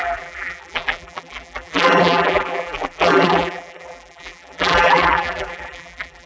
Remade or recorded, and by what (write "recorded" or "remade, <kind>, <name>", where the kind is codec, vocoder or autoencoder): remade, vocoder, BigVGAN v2